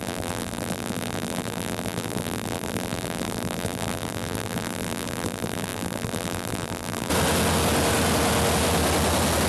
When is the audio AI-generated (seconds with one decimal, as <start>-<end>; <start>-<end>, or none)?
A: 0.0-7.1